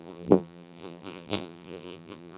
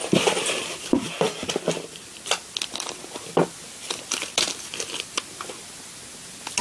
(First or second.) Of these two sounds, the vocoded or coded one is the first